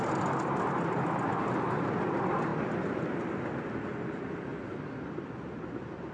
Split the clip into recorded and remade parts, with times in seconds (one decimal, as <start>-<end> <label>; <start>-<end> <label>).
0.0-6.1 recorded